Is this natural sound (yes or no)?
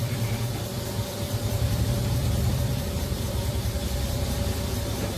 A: no